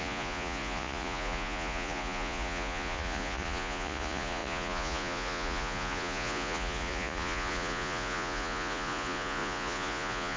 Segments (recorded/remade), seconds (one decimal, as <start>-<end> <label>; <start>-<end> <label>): 0.0-10.4 remade

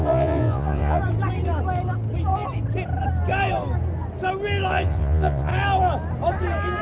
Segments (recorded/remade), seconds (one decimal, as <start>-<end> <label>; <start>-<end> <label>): 0.0-1.0 remade; 1.0-4.7 recorded; 4.7-5.5 remade; 5.5-6.8 recorded

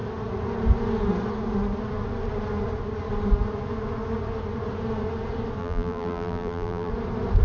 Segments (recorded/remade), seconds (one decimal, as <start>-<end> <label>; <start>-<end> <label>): 0.0-5.6 recorded; 5.6-6.9 remade; 6.9-7.4 recorded